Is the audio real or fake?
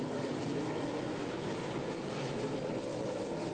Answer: real